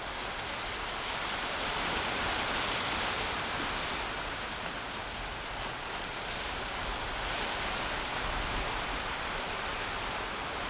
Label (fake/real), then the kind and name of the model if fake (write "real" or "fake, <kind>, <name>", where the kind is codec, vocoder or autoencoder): real